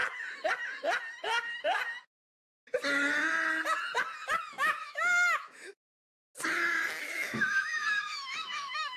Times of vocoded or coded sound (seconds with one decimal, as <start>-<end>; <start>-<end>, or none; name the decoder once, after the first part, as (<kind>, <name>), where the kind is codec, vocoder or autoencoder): 4.5-6.2 (autoencoder, DAC-VAE); 7.0-9.0

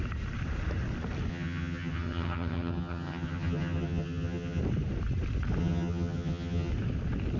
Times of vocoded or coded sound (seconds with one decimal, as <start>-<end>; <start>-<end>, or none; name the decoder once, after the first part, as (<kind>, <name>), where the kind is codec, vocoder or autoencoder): 1.3-4.6 (vocoder, HiFi-GAN); 5.6-6.7

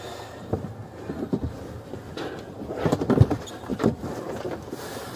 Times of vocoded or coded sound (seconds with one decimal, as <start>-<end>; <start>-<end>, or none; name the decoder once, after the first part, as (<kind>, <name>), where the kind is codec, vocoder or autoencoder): 0.0-0.8 (vocoder, BigVGAN v2); 2.5-5.2

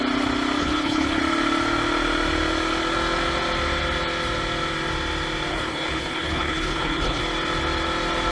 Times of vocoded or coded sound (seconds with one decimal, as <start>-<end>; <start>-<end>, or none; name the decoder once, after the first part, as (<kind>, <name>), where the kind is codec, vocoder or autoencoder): 0.6-1.2 (codec, HILCodec); 5.5-7.2

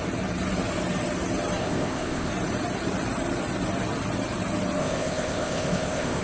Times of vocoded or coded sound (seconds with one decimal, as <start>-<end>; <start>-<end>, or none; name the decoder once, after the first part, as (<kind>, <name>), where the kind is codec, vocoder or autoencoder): 1.6-2.3 (codec, ZipCodec); 4.8-6.2

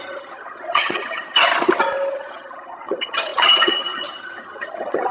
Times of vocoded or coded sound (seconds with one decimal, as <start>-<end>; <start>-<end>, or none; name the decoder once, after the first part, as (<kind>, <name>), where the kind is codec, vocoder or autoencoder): 0.0-1.5 (vocoder, HiFi-GAN); 2.1-5.1

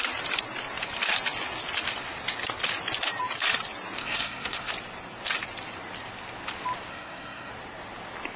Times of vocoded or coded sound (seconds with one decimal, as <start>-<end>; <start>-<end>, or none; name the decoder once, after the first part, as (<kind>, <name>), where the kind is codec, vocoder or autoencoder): 4.0-4.7 (codec, SNAC); 6.9-7.5